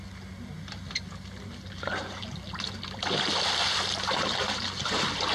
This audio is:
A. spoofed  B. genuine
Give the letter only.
B